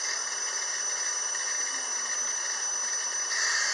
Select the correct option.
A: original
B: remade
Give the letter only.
A